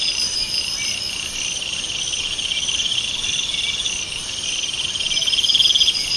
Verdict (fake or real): real